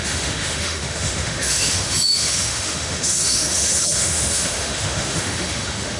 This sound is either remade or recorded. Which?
remade